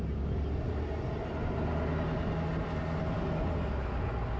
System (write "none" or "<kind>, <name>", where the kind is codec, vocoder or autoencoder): none